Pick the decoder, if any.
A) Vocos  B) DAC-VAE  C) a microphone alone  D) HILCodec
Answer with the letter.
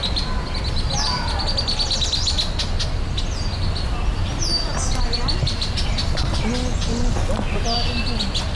C